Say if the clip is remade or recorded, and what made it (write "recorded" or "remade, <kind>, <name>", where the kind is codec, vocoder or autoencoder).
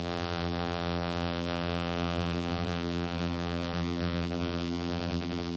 remade, vocoder, BigVGAN v2